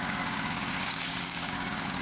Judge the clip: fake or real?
fake